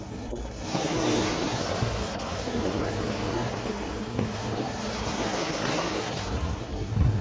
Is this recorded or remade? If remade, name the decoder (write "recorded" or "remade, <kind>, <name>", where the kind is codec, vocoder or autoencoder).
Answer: remade, codec, SNAC